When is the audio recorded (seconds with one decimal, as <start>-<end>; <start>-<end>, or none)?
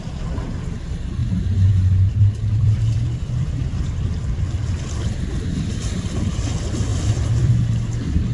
0.0-2.1; 6.3-6.9; 7.5-8.3